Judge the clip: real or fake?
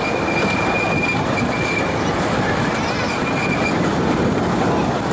real